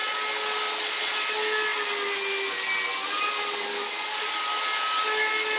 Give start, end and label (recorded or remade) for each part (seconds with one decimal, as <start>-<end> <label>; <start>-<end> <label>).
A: 0.0-5.6 recorded